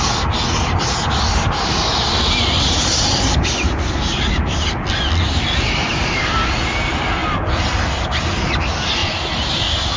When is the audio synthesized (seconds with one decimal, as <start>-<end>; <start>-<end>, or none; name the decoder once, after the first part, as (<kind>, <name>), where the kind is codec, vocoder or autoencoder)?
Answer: none